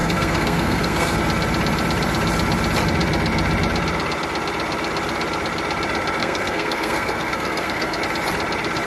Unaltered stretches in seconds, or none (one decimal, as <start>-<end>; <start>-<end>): 1.2-6.2; 8.0-8.9